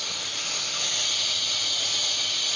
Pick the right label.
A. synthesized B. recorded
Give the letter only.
B